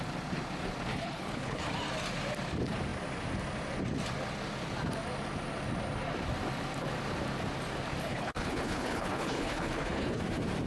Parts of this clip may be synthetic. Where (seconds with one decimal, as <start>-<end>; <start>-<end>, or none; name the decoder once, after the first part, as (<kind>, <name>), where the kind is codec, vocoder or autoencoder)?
0.9-1.6 (codec, HILCodec); 8.1-10.2